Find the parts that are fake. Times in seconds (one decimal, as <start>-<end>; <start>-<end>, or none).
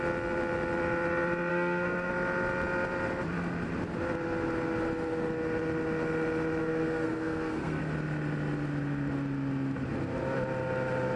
1.5-2.1; 6.6-7.8